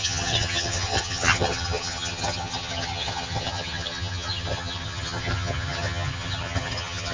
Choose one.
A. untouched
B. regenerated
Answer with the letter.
B